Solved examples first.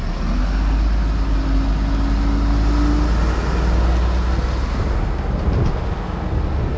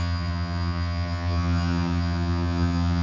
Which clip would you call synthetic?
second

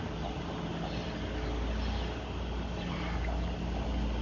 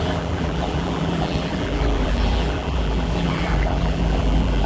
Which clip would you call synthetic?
second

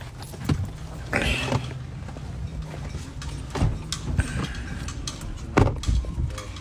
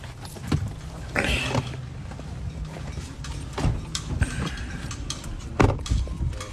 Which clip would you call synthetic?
second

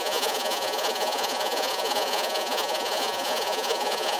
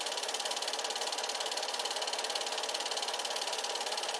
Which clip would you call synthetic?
first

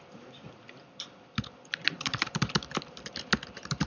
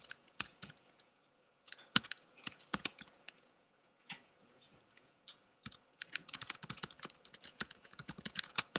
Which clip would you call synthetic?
second